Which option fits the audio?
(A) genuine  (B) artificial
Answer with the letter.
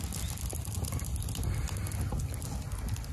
A